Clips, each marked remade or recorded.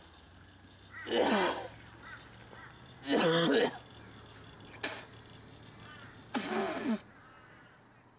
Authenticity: recorded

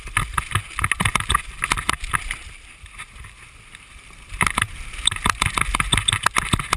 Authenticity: recorded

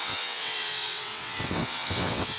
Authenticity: remade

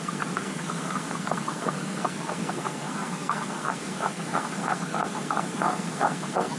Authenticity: remade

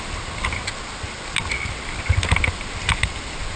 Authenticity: recorded